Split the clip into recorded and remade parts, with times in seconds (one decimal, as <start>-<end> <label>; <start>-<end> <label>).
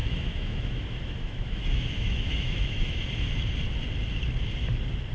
0.0-3.1 remade; 3.1-5.1 recorded